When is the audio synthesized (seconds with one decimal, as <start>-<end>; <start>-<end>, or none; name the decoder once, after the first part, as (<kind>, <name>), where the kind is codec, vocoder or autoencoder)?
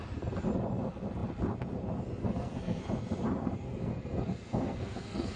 2.2-2.8 (codec, SNAC); 3.4-5.4